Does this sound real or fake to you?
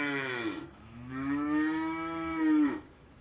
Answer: fake